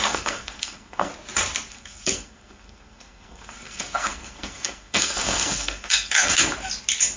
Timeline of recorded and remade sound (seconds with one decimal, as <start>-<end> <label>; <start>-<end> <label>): 0.0-1.1 remade; 1.1-1.7 recorded; 1.7-6.5 remade; 6.5-7.2 recorded